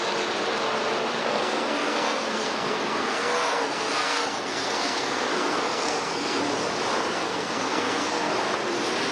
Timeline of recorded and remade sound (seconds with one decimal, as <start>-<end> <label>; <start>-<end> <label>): 0.0-1.2 recorded; 1.2-6.4 remade; 6.4-7.1 recorded; 7.1-8.3 remade; 8.3-9.1 recorded